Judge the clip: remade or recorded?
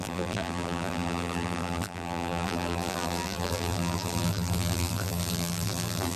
remade